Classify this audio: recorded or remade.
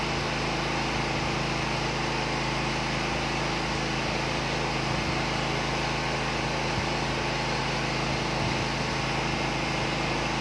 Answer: recorded